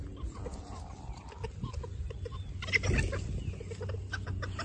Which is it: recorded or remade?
recorded